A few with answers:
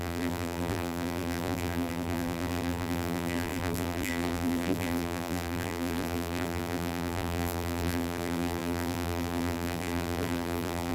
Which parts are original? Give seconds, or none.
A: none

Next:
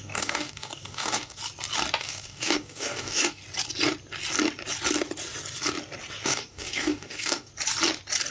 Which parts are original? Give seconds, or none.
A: 1.4-2.0; 3.4-6.2; 7.5-8.3

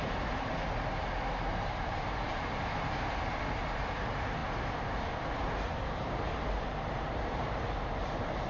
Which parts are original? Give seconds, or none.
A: 4.4-5.3

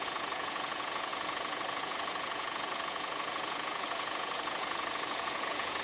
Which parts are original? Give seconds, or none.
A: none

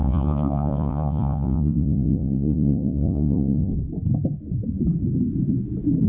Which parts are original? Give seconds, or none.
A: 3.7-6.1